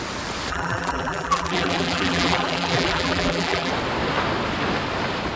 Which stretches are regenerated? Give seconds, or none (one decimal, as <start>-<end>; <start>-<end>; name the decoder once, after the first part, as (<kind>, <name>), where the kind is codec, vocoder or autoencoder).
0.5-3.7 (vocoder, BigVGAN v2)